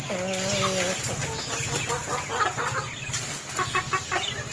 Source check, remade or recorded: recorded